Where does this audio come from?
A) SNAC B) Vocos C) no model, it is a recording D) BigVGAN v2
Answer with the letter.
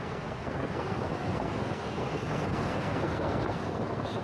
A